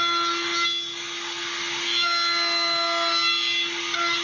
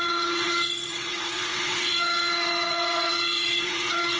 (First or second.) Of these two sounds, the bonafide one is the first